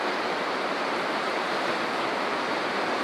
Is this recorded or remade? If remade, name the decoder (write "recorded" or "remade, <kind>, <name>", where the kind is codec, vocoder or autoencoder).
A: remade, vocoder, BigVGAN v2